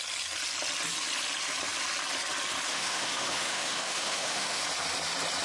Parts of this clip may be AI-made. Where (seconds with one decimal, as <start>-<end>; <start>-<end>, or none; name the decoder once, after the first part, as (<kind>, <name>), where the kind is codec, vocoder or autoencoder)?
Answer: 2.7-4.6 (autoencoder, DAC-VAE)